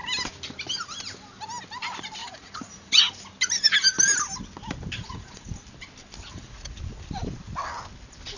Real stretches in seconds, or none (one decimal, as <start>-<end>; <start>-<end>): 0.0-2.2; 3.1-5.0; 5.5-6.3; 6.8-8.4